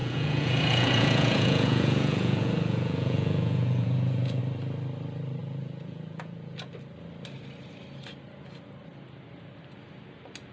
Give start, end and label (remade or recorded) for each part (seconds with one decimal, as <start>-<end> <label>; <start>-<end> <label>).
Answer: 0.0-4.4 remade; 4.4-5.4 recorded; 5.4-6.7 remade; 6.7-10.5 recorded